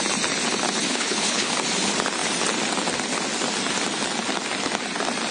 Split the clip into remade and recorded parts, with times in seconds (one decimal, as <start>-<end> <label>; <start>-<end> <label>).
0.0-0.9 recorded; 0.9-1.5 remade; 1.5-5.3 recorded

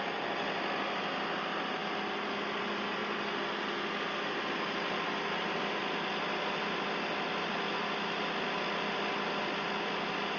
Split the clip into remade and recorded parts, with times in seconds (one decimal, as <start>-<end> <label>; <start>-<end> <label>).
0.0-10.4 recorded